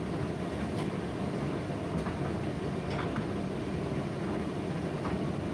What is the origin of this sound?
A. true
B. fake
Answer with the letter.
A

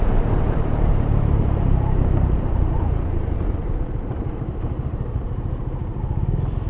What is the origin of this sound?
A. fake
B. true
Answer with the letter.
A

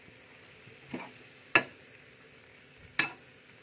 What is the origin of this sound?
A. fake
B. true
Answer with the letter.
B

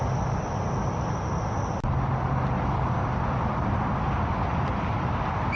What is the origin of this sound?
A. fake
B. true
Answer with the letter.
B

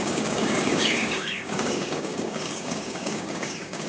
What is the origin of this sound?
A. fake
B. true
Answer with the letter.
A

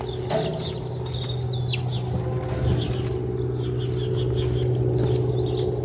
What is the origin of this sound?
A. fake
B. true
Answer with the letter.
B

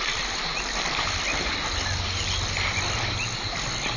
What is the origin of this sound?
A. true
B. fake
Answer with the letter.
A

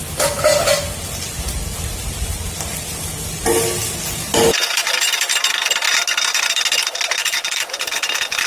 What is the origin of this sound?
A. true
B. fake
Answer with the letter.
A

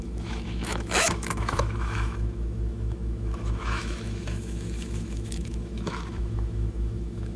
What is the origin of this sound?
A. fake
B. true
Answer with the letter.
A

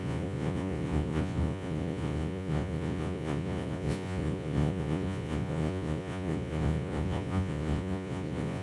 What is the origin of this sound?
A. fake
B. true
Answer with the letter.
A